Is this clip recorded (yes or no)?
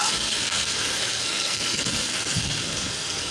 no